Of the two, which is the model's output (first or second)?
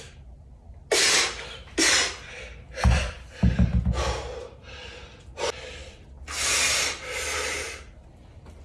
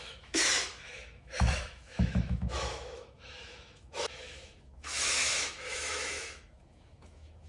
second